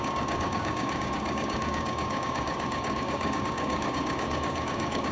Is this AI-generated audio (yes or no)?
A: yes